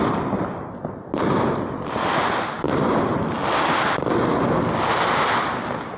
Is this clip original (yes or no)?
yes